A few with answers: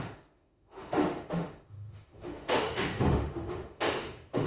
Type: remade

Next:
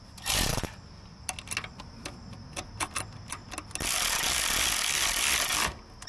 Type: recorded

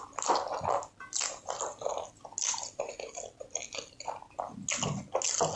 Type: recorded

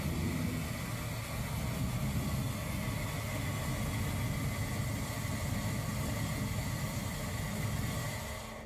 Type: recorded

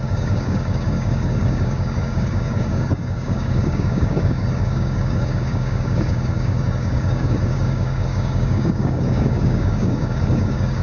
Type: remade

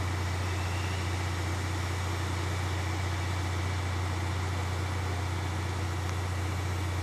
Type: recorded